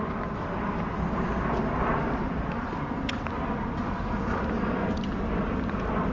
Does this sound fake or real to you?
real